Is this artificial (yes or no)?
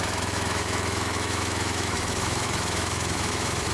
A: yes